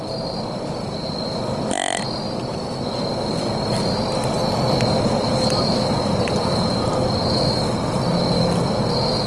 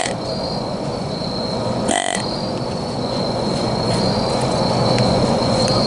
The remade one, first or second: second